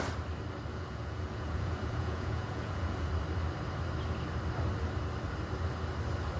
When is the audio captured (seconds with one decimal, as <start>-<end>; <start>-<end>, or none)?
0.0-0.7; 3.1-6.4